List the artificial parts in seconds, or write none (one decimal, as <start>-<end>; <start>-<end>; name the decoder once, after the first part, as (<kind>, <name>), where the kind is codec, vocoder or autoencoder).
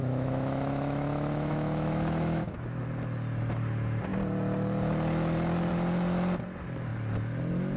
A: 0.0-2.8 (autoencoder, DAC-VAE)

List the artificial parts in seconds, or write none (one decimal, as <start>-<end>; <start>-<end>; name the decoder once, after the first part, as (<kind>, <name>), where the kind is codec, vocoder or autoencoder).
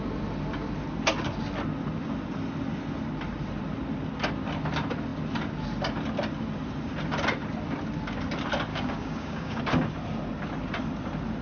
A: 8.7-9.6 (codec, DAC)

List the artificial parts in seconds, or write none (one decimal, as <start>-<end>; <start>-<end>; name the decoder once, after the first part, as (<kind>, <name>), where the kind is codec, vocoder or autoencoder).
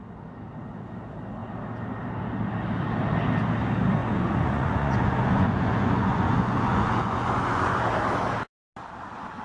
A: 4.0-7.8 (vocoder, Vocos)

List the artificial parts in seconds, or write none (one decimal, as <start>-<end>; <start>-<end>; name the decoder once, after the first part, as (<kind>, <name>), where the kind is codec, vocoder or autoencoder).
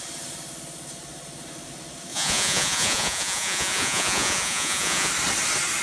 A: 2.1-5.1 (vocoder, Vocos)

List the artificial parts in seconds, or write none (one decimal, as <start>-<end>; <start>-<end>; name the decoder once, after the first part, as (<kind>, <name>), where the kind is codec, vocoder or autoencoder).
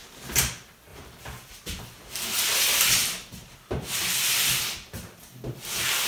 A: 0.9-1.8 (vocoder, BigVGAN v2); 3.0-6.1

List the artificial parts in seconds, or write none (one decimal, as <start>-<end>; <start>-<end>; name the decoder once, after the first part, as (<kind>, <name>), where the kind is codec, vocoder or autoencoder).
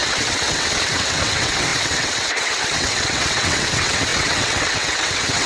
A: 0.0-5.5 (vocoder, WaveNeXt)